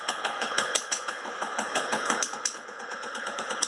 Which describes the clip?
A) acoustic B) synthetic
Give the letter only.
B